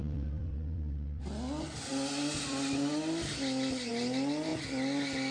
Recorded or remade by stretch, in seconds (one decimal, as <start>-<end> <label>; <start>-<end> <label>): 0.0-1.2 remade; 1.2-5.3 recorded